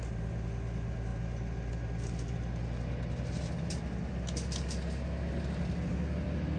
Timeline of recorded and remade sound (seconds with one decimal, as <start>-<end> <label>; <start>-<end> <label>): 0.0-6.6 recorded